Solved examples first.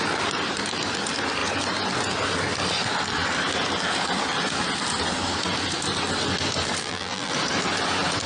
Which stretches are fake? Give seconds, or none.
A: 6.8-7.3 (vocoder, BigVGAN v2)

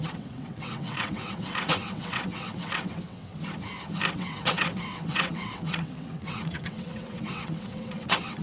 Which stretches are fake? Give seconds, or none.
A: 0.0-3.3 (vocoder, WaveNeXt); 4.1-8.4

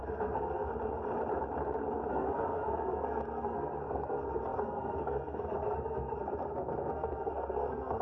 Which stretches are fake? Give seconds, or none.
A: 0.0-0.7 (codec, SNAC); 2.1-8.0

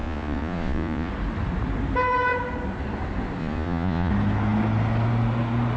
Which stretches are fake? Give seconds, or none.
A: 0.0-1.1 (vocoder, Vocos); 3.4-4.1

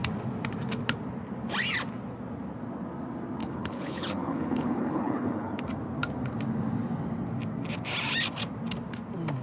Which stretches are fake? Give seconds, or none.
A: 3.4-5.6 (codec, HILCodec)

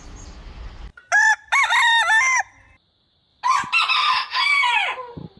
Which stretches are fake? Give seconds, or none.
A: 3.3-3.9 (vocoder, BigVGAN v2)

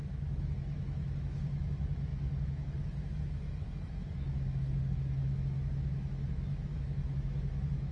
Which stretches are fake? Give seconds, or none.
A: 0.0-7.9 (autoencoder, DAC-VAE)

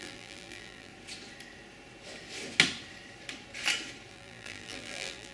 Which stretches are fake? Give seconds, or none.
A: 0.0-0.9 (vocoder, BigVGAN v2); 4.1-5.3